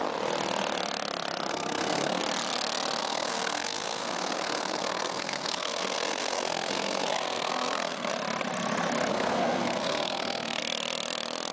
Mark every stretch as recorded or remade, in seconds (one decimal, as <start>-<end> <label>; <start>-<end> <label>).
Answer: 0.0-1.5 recorded; 1.5-2.2 remade; 2.2-3.0 recorded; 3.0-8.1 remade; 8.1-9.1 recorded; 9.1-10.6 remade; 10.6-11.5 recorded